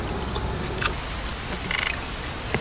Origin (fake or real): real